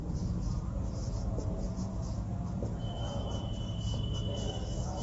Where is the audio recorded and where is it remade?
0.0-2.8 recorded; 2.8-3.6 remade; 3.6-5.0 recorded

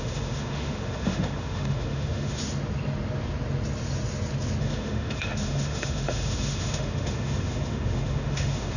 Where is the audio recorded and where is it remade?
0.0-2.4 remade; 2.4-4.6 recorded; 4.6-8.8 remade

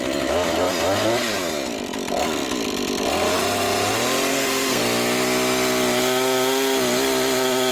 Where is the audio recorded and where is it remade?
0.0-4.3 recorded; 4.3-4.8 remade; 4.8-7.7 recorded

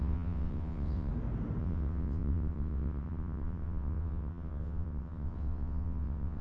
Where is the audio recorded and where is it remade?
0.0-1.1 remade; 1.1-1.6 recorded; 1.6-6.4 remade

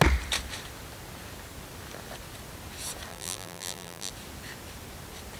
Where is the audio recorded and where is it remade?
0.0-3.1 recorded; 3.1-4.1 remade; 4.1-5.4 recorded

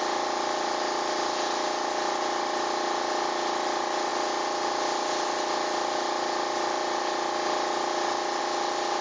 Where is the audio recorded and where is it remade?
0.0-9.0 recorded

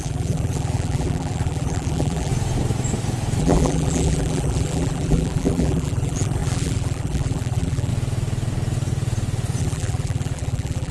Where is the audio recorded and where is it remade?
0.0-2.3 remade; 2.3-3.4 recorded; 3.4-7.9 remade; 7.9-9.6 recorded; 9.6-10.9 remade